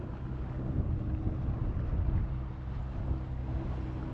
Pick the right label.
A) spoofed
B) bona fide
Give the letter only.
B